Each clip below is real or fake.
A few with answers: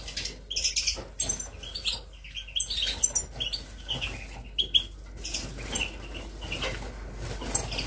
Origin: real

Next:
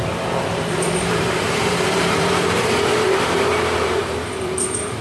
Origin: fake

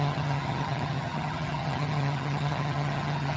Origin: fake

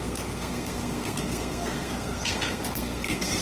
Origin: fake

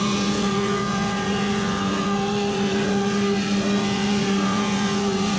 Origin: fake